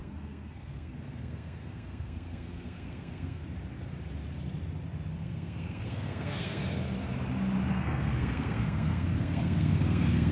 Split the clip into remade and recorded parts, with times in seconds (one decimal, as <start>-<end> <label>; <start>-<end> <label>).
0.0-3.4 remade; 3.4-5.1 recorded; 5.1-6.6 remade; 6.6-7.7 recorded; 7.7-10.3 remade